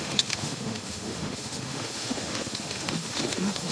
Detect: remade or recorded remade